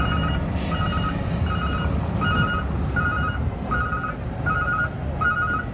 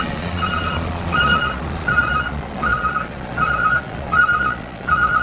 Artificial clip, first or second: second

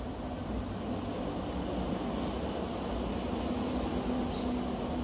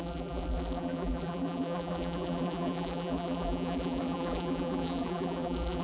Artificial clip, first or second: second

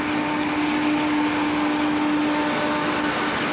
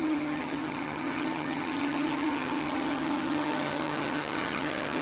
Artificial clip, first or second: second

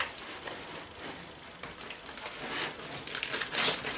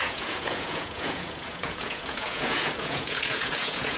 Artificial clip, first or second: second